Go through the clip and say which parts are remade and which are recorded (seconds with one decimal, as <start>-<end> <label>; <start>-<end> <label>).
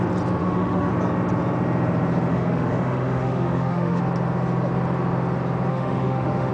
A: 0.0-0.4 recorded; 0.4-0.9 remade; 0.9-2.3 recorded; 2.3-4.0 remade; 4.0-5.7 recorded; 5.7-6.5 remade